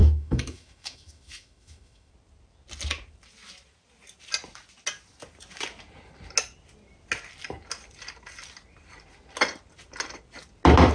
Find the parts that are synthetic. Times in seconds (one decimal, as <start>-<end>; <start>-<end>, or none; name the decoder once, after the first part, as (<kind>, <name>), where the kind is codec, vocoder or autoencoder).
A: 0.0-2.1 (autoencoder, DAC-VAE)